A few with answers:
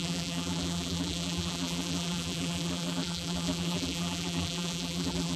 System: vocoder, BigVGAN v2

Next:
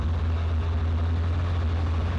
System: none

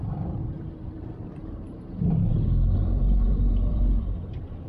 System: vocoder, BigVGAN v2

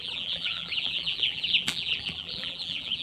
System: vocoder, BigVGAN v2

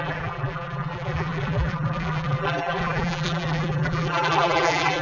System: vocoder, BigVGAN v2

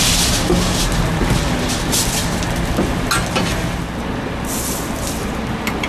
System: none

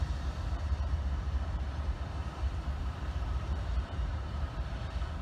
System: vocoder, BigVGAN v2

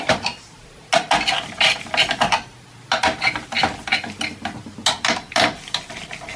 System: none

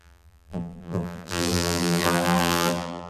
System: vocoder, BigVGAN v2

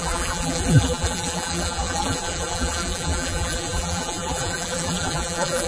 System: vocoder, BigVGAN v2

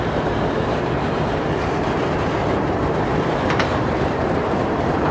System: vocoder, BigVGAN v2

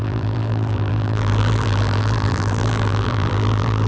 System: vocoder, BigVGAN v2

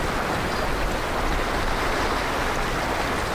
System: none